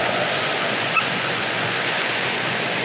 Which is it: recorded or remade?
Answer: remade